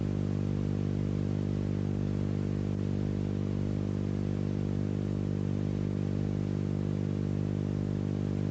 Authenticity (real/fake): real